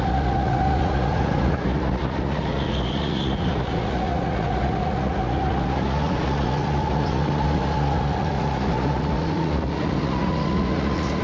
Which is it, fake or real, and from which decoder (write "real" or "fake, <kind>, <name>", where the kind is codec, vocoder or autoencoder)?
fake, vocoder, Vocos